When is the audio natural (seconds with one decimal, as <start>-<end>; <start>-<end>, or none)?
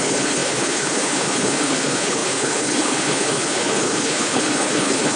none